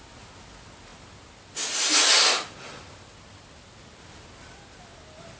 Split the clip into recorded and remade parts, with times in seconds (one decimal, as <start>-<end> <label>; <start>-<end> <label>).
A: 0.0-5.4 recorded